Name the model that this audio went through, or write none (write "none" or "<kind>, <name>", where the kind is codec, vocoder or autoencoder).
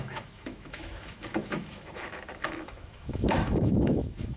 autoencoder, DAC-VAE